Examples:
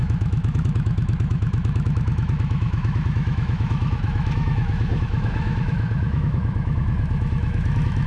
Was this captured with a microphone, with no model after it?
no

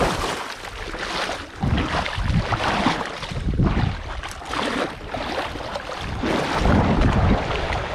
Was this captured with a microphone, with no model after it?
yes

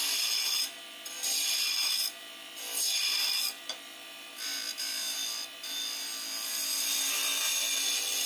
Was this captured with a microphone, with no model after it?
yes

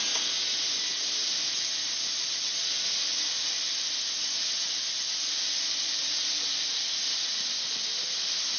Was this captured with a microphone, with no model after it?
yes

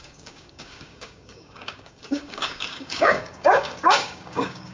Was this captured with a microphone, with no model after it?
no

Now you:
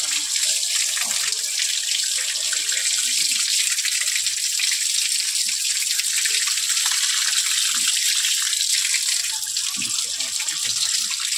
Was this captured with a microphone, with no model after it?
yes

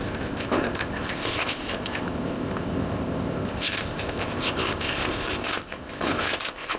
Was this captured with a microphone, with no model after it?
no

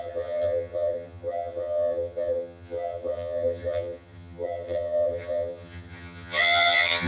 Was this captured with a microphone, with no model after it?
no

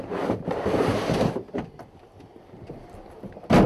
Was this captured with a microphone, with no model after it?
yes